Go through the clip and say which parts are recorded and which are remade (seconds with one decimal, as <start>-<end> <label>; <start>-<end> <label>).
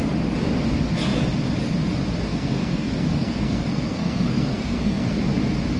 0.0-2.3 recorded; 2.3-5.2 remade; 5.2-5.8 recorded